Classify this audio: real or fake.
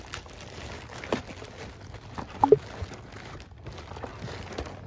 real